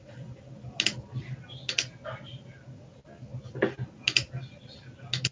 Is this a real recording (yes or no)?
yes